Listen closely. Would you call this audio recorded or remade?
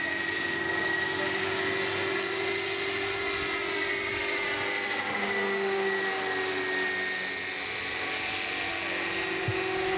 recorded